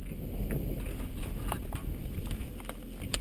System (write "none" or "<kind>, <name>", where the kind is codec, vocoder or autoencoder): none